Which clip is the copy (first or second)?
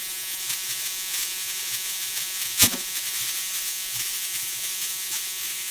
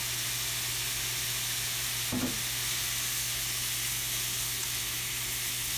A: first